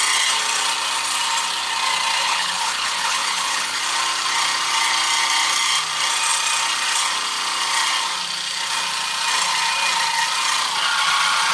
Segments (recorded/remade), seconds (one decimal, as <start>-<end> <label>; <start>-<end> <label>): 0.0-2.2 recorded; 2.2-3.8 remade; 3.8-11.5 recorded